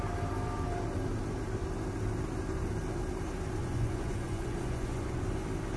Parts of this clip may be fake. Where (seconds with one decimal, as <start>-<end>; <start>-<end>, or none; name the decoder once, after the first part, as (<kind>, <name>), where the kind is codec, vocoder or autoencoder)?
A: 3.6-5.2 (vocoder, Vocos)